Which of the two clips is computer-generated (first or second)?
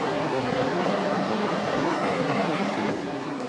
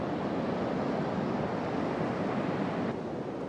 first